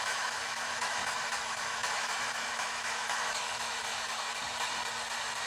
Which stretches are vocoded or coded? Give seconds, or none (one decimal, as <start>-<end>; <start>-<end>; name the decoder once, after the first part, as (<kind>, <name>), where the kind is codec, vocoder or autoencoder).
0.0-4.3 (autoencoder, DAC-VAE)